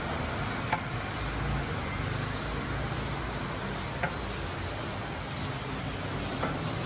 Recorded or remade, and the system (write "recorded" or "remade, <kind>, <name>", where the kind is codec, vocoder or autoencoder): recorded